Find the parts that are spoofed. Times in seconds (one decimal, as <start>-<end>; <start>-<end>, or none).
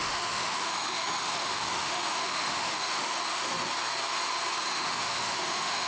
0.0-3.5; 4.6-5.9